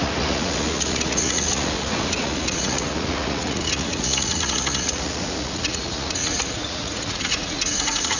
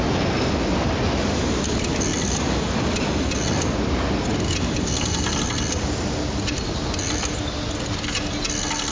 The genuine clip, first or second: second